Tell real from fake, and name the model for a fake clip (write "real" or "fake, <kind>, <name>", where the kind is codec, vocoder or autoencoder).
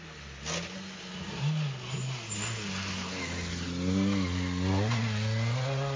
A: real